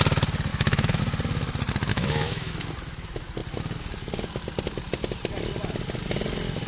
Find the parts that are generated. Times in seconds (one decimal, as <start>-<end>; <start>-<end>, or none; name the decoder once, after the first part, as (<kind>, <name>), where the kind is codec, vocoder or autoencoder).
0.5-1.0 (autoencoder, DAC-VAE); 1.9-2.5